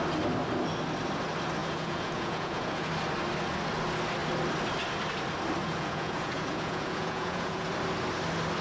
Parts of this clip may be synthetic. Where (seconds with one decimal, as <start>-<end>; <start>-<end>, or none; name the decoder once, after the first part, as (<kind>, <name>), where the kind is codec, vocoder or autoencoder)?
1.6-2.9 (vocoder, Vocos); 5.6-7.7